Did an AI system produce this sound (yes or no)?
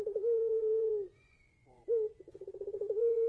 yes